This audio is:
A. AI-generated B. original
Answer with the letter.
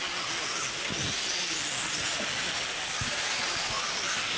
B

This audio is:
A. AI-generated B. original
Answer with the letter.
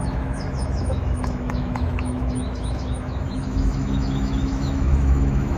A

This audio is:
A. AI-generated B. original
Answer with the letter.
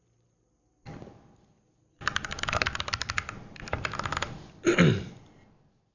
B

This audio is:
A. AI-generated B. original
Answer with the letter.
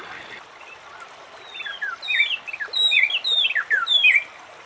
B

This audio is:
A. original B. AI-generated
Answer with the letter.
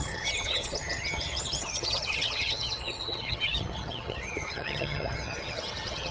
B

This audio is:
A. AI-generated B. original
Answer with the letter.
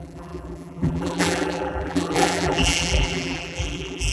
A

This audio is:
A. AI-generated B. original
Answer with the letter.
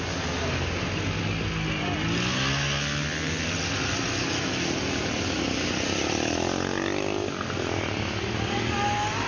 B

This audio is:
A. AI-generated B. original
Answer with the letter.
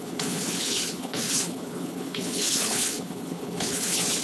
A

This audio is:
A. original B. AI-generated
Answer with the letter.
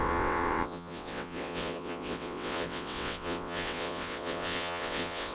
B